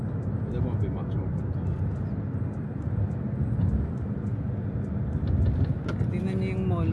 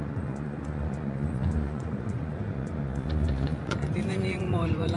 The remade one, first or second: second